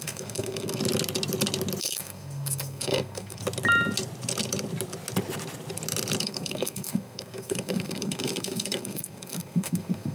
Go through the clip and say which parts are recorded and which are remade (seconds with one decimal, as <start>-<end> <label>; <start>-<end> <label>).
0.0-0.8 remade; 0.8-1.8 recorded; 1.8-3.4 remade; 3.4-6.2 recorded; 6.2-10.1 remade